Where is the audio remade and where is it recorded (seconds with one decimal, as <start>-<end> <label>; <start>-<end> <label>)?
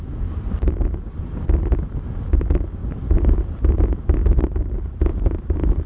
0.0-5.1 recorded; 5.1-5.9 remade